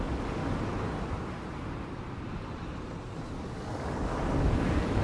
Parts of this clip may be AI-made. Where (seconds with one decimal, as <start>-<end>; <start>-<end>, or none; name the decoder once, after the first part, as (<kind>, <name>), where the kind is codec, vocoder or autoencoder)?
0.0-0.4 (codec, DAC); 3.4-5.0